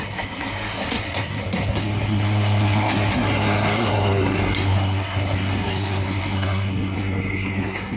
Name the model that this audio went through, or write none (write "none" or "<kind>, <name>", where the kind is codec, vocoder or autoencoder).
codec, SNAC